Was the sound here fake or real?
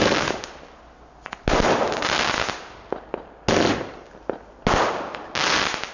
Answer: real